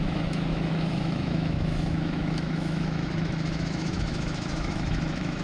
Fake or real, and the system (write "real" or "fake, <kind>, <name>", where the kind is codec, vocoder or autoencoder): fake, autoencoder, DAC-VAE